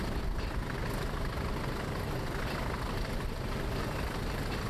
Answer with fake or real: real